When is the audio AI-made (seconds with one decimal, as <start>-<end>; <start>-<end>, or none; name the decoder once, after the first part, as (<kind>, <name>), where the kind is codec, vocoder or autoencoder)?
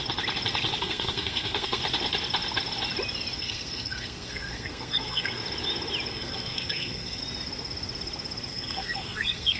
0.8-1.8 (codec, SNAC); 3.4-5.4; 6.1-7.2; 8.5-9.6